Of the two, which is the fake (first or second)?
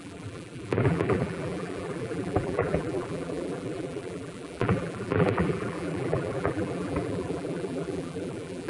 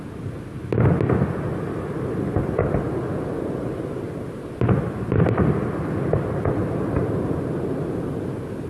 first